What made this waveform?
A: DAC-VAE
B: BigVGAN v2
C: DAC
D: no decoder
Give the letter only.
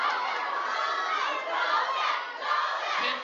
D